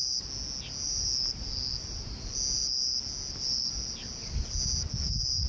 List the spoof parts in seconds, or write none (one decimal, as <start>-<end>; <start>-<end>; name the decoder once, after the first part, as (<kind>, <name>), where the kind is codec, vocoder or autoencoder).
none